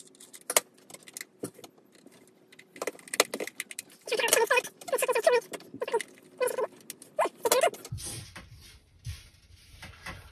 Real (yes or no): yes